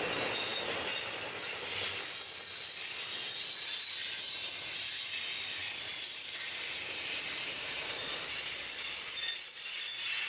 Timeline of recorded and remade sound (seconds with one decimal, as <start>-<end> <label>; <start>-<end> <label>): 0.0-5.6 recorded; 5.6-8.6 remade; 8.6-10.3 recorded